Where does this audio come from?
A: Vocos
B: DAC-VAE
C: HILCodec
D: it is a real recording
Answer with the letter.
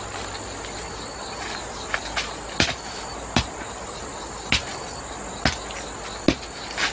D